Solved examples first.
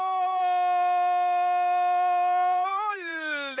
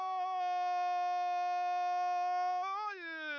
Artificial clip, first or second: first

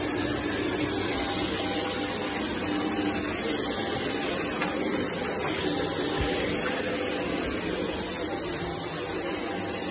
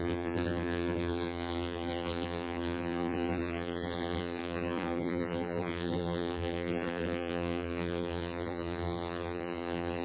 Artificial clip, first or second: second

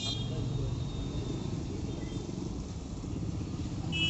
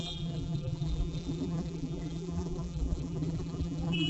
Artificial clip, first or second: second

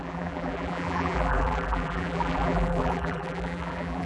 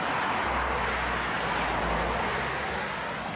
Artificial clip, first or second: first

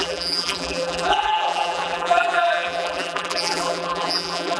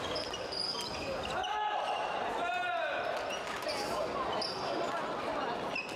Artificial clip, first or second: first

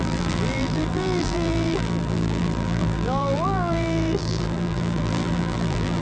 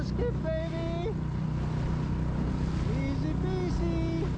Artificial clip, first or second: first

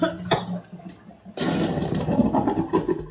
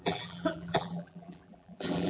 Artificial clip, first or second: second